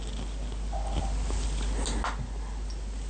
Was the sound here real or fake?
real